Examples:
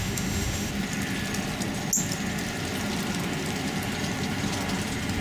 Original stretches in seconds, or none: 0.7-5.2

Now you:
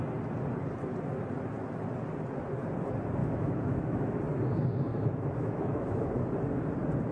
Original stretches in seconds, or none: 0.0-3.2; 4.2-4.9; 6.1-7.1

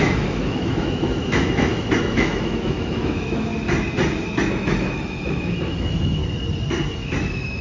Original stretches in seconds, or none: 3.5-4.5; 6.2-6.9

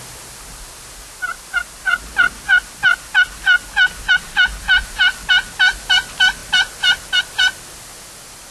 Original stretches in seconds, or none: 0.0-8.5

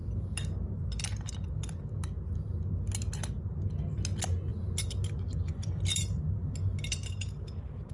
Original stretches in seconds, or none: 0.0-7.9

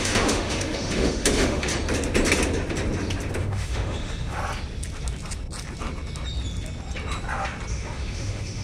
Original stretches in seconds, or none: 1.7-3.4; 4.4-7.7